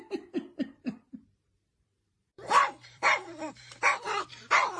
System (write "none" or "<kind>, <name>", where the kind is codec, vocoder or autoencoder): vocoder, BigVGAN v2